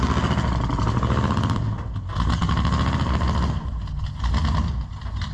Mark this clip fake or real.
real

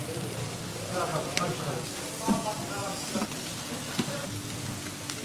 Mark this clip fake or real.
real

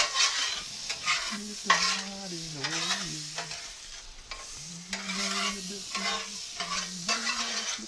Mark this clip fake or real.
real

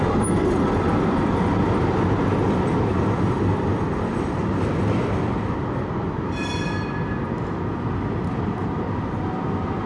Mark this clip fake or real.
real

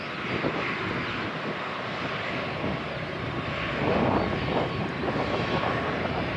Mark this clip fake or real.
real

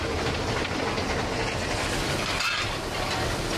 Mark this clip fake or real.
real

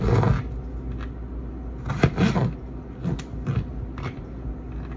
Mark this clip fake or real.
real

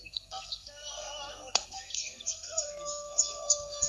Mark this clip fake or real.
fake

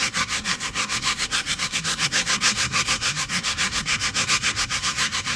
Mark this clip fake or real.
fake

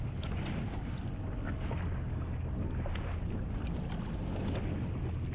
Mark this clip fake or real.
real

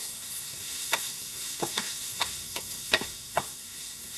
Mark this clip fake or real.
fake